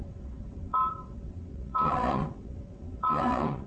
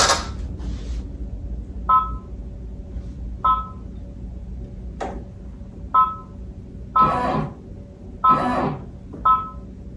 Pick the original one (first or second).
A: second